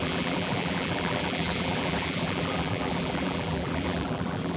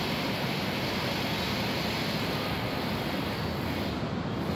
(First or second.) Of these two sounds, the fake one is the first